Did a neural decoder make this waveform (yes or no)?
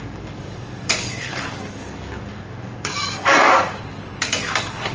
yes